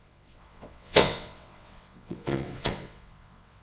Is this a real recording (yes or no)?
no